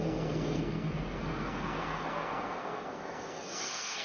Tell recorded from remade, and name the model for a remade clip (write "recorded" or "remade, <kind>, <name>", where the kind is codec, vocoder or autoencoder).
remade, codec, SNAC